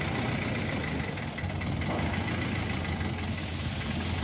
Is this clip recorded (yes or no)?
yes